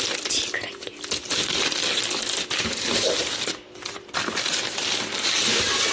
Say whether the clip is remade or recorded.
recorded